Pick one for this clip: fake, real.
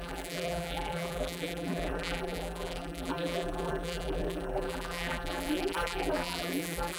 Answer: fake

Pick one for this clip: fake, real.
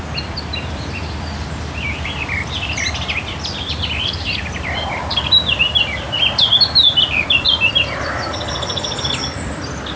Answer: fake